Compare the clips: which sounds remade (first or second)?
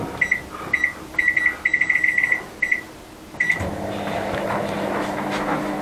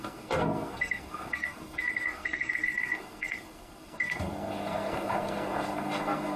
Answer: second